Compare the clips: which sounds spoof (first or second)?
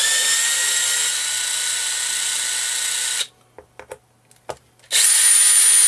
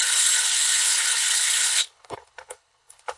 second